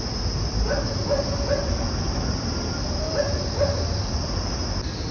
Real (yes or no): yes